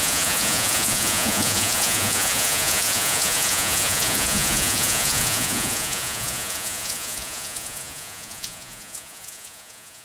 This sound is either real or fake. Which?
fake